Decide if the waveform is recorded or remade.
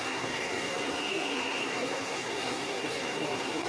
remade